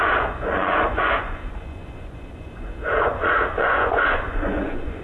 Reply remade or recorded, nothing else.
remade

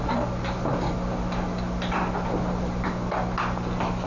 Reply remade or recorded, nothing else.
recorded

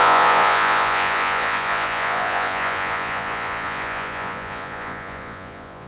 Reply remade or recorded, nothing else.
remade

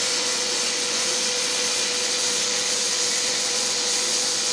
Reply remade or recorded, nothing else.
remade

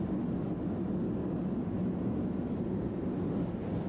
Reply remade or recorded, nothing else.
recorded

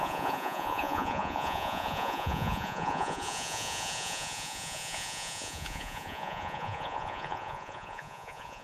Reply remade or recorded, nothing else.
remade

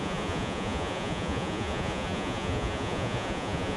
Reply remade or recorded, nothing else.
remade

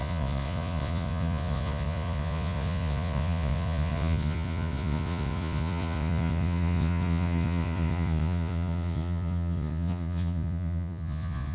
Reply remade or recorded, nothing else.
remade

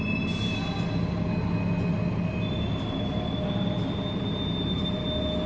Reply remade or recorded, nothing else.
recorded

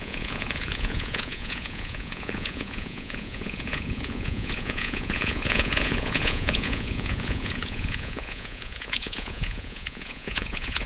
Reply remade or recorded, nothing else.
remade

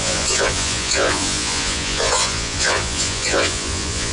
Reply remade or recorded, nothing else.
remade